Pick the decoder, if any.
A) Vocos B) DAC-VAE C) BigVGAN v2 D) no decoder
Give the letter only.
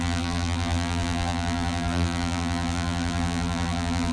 C